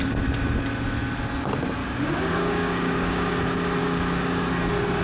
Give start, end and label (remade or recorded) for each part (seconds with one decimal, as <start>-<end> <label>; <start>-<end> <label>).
0.0-1.8 recorded; 1.8-3.4 remade; 3.4-3.8 recorded; 3.8-4.5 remade; 4.5-5.0 recorded